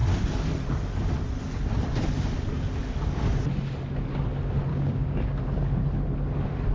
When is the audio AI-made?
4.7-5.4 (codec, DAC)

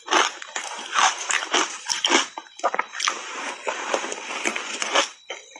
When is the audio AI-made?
4.5-5.0 (vocoder, Vocos)

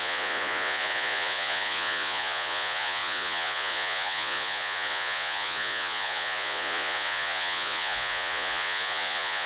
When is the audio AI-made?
0.0-9.5 (vocoder, Vocos)

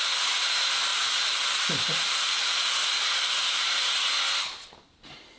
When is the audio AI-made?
0.9-4.1 (vocoder, BigVGAN v2)

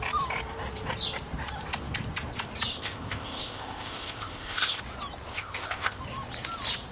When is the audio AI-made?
2.7-4.8 (codec, ZipCodec); 5.3-6.0

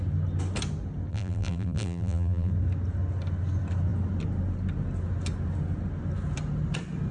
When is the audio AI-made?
1.1-2.5 (vocoder, BigVGAN v2)